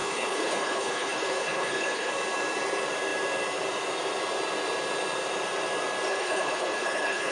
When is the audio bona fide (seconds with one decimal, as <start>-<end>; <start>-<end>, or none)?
2.1-6.1